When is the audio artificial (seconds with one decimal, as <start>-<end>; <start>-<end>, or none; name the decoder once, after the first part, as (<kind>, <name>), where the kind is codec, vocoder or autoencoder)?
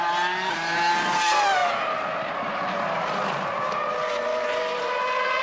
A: none